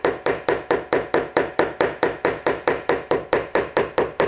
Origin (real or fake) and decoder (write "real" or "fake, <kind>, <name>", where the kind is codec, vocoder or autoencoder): fake, vocoder, BigVGAN v2